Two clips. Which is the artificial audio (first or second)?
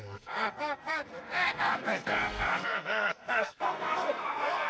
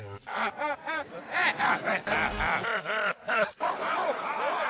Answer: first